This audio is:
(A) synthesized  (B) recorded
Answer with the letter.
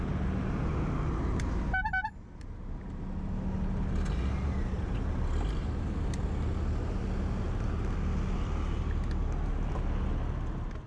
B